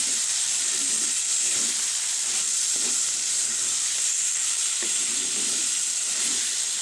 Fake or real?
fake